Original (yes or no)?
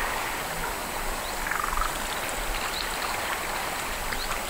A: yes